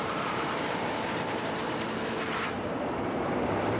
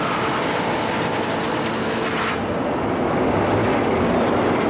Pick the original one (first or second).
second